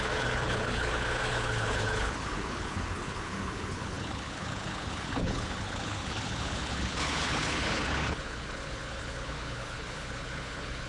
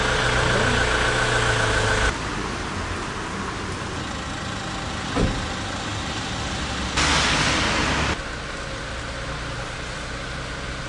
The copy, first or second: first